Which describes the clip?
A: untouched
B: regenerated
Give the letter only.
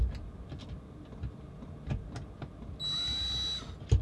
A